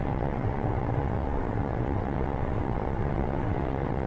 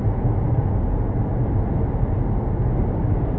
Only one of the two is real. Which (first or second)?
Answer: second